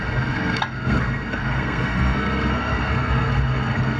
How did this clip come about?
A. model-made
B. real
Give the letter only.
A